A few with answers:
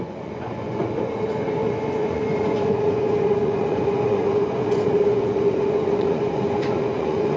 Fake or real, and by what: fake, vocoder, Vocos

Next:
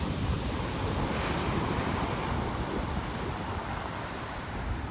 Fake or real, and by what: real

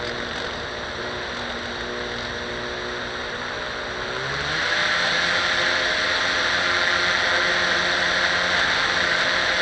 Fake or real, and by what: real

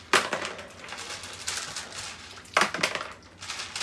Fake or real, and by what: real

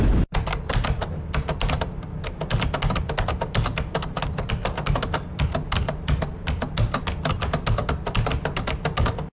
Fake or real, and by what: real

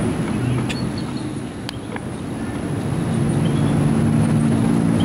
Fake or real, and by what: real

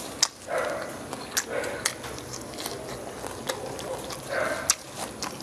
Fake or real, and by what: real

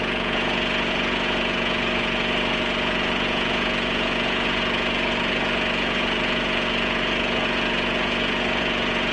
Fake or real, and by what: fake, vocoder, Vocos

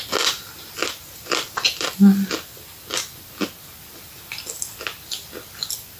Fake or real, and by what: real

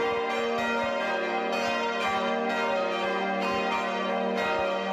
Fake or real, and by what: real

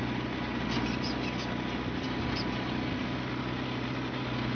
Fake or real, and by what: real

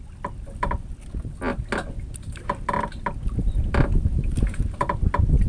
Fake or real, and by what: real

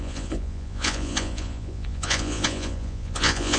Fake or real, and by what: fake, vocoder, Vocos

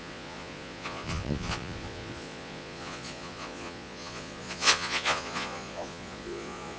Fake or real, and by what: fake, vocoder, Vocos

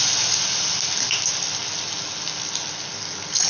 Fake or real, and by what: real